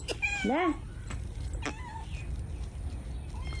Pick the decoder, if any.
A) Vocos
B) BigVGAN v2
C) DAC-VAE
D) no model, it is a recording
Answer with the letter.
D